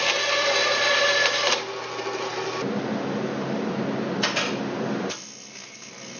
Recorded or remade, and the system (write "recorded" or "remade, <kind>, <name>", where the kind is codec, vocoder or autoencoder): recorded